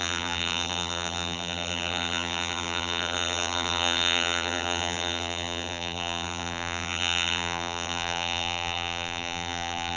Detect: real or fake fake